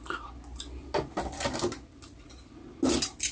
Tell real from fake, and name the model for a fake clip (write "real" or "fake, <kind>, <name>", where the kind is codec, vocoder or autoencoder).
real